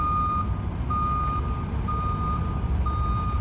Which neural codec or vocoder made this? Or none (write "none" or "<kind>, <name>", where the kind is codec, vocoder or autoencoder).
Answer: none